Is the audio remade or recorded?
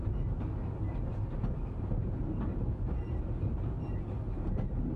recorded